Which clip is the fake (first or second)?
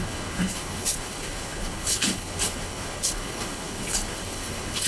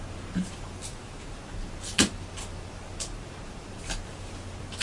first